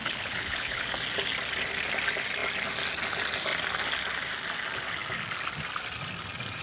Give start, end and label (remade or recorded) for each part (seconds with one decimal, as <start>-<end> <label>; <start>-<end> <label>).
0.0-0.8 remade; 0.8-6.6 recorded